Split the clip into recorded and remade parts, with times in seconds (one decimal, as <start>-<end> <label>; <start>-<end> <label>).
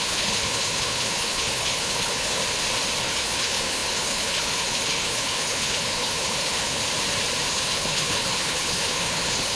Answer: 0.0-2.4 remade; 2.4-3.0 recorded; 3.0-6.8 remade; 6.8-7.5 recorded; 7.5-9.6 remade